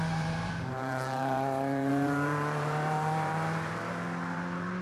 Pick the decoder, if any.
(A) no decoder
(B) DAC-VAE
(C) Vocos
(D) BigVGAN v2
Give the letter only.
D